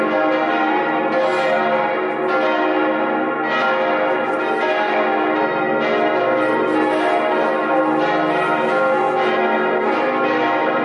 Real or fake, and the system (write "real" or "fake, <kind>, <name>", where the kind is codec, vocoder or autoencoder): real